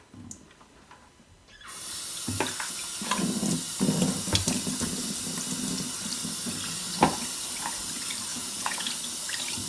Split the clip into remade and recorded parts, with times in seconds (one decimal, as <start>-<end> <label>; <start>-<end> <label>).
0.0-8.3 recorded; 8.3-8.9 remade; 8.9-9.7 recorded